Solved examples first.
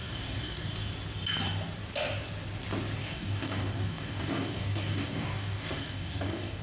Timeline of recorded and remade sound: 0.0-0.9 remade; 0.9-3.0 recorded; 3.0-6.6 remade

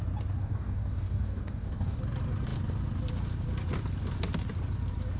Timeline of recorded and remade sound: 0.0-0.4 recorded; 0.4-2.0 remade; 2.0-5.2 recorded

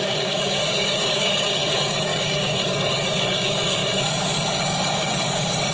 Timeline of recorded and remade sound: 0.0-5.7 remade

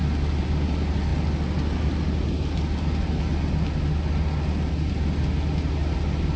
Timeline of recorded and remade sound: 0.0-6.4 recorded

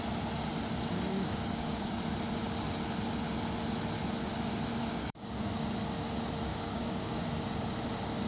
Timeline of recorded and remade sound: 0.0-0.9 recorded; 0.9-2.0 remade; 2.0-4.8 recorded; 4.8-5.5 remade; 5.5-6.5 recorded; 6.5-7.3 remade; 7.3-8.3 recorded